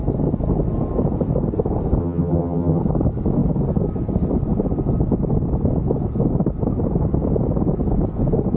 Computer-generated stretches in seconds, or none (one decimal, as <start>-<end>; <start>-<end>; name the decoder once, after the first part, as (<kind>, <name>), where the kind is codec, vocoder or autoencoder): 2.0-2.8 (vocoder, HiFi-GAN)